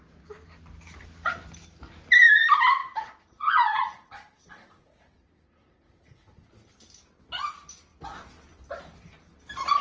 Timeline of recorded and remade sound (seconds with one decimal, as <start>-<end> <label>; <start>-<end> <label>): 0.0-2.8 recorded; 2.8-6.5 remade; 6.5-9.8 recorded